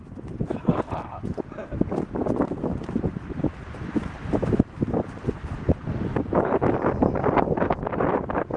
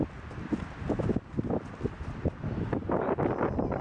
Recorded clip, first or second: second